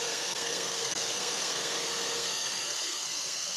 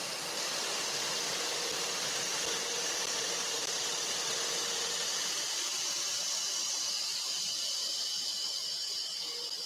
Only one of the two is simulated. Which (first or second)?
first